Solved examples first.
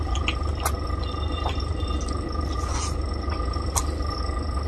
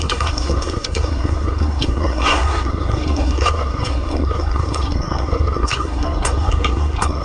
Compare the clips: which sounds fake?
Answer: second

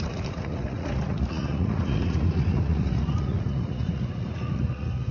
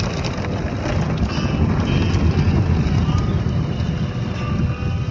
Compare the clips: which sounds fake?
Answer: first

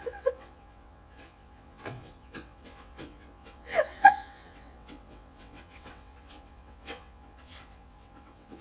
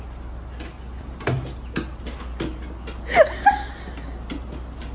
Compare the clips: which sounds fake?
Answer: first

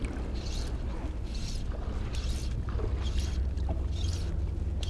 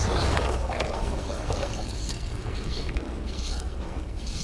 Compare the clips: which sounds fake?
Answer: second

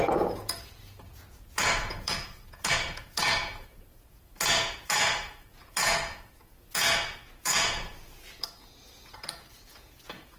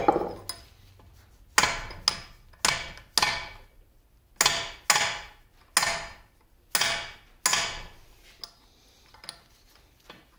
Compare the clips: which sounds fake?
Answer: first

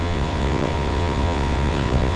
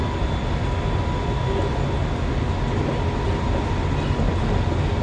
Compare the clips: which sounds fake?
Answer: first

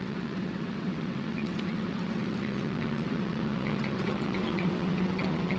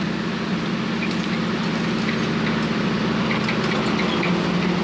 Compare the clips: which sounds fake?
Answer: first